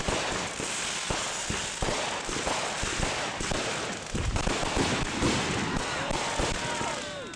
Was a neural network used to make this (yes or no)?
no